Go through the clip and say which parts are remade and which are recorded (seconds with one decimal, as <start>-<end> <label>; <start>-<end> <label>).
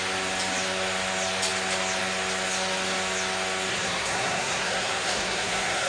0.0-3.7 recorded; 3.7-5.9 remade